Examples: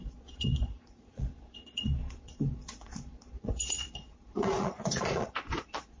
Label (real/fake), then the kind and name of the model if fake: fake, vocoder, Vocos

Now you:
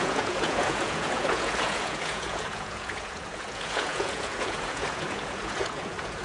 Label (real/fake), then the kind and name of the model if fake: fake, vocoder, Vocos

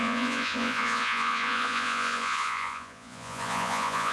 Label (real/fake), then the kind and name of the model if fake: fake, vocoder, Vocos